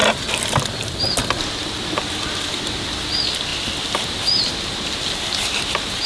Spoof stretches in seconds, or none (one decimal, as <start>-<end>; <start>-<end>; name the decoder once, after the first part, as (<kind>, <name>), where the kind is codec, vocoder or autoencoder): none